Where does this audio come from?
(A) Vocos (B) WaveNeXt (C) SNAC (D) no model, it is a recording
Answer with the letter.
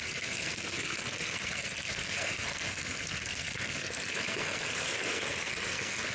C